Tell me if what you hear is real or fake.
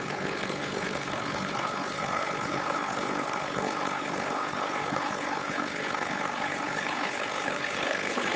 fake